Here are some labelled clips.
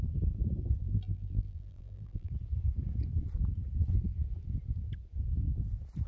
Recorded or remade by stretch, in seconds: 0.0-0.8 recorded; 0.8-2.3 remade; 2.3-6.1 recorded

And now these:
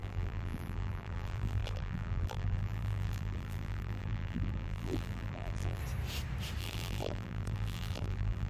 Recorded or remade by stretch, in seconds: 0.0-5.8 remade; 5.8-6.6 recorded; 6.6-8.5 remade

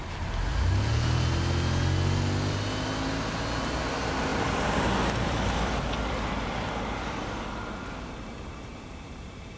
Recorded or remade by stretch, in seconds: 0.0-4.3 recorded; 4.3-7.2 remade; 7.2-8.7 recorded; 8.7-9.6 remade

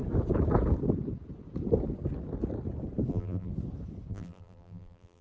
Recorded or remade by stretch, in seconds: 0.0-3.1 recorded; 3.1-3.5 remade; 3.5-4.1 recorded; 4.1-5.2 remade

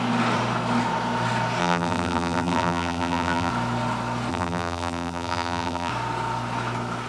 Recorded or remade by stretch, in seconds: 0.0-1.6 recorded; 1.6-3.5 remade; 3.5-4.3 recorded; 4.3-5.9 remade; 5.9-7.1 recorded